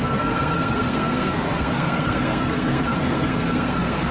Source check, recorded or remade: remade